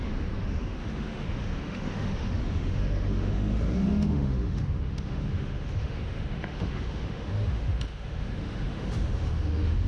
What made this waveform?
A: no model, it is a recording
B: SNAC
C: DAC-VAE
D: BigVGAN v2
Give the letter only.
C